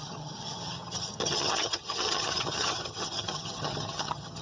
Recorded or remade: remade